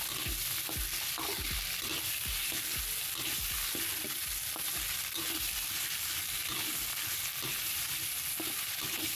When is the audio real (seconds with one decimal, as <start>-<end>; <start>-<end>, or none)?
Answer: 0.0-9.2